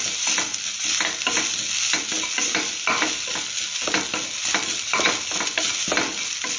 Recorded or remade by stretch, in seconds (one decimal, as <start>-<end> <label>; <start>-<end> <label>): 0.0-6.6 recorded